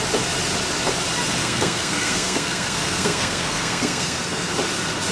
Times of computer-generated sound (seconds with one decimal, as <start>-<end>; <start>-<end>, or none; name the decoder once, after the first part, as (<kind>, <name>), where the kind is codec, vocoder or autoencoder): 1.4-4.5 (codec, SNAC)